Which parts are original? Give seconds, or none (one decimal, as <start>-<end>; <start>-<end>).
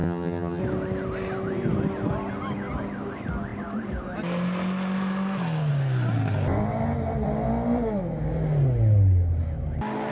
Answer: 0.6-10.1